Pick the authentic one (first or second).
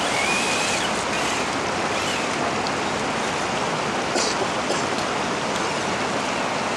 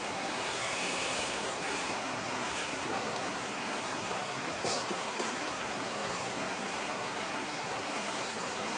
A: first